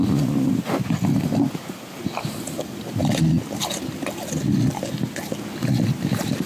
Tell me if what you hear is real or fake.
real